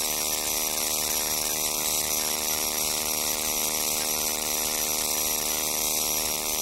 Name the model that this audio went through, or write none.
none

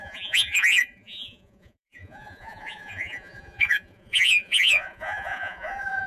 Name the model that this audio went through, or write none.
vocoder, Vocos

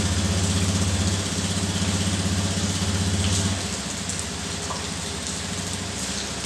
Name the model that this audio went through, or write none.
none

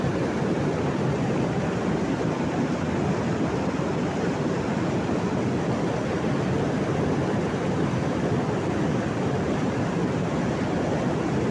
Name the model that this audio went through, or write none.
none